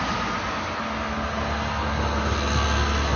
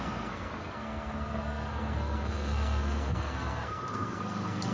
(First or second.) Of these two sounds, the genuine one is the first